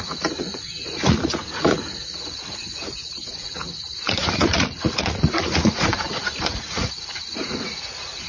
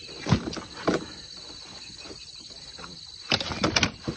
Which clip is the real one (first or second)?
second